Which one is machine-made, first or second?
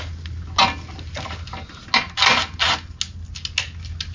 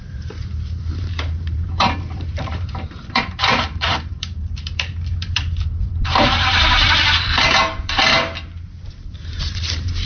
second